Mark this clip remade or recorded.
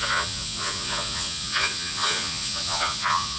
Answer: remade